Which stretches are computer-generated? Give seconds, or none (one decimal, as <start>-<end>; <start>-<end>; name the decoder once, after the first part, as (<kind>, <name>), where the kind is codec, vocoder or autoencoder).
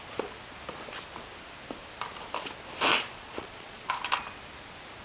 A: 2.9-3.9 (vocoder, Vocos)